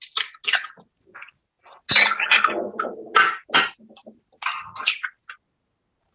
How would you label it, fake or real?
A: real